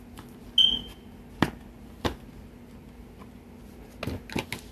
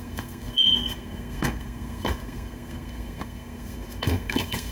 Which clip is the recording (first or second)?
first